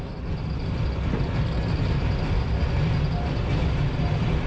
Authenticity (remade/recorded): recorded